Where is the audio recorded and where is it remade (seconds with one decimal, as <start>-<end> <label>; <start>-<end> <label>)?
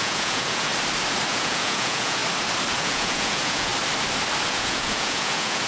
0.0-0.7 remade; 0.7-1.3 recorded; 1.3-2.2 remade; 2.2-2.8 recorded; 2.8-3.7 remade; 3.7-4.5 recorded; 4.5-5.7 remade